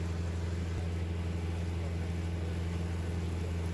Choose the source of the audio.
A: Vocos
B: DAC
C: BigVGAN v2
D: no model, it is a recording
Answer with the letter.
D